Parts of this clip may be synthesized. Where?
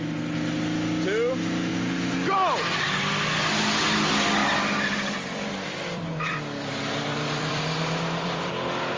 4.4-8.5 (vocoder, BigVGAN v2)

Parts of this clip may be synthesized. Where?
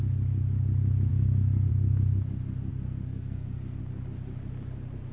1.1-1.7 (codec, SNAC); 2.7-3.8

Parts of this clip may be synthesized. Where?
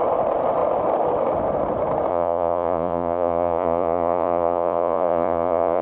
2.1-5.8 (vocoder, Vocos)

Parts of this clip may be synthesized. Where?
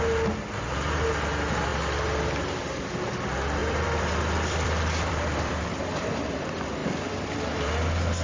3.6-5.5 (vocoder, BigVGAN v2); 6.8-7.6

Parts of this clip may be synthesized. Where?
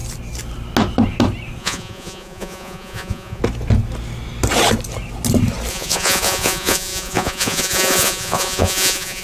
1.6-3.4 (vocoder, Vocos); 5.7-9.2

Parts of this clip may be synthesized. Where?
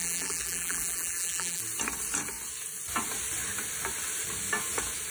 0.0-1.6 (vocoder, BigVGAN v2)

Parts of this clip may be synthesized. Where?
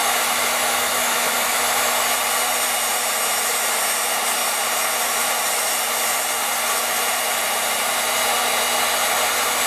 0.0-2.0 (autoencoder, DAC-VAE)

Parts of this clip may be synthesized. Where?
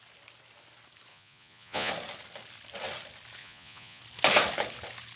1.1-1.9 (vocoder, Vocos); 3.4-4.0